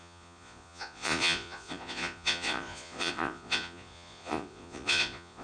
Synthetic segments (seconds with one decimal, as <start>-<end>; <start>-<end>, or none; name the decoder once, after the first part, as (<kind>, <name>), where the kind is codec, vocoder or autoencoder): 0.0-5.4 (vocoder, Vocos)